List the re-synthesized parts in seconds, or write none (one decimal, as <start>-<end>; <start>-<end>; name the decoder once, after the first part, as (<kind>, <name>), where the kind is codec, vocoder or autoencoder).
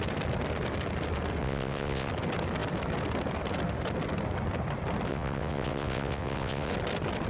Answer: 1.4-2.1 (vocoder, WaveNeXt); 5.1-6.7